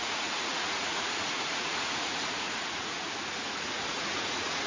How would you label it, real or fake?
fake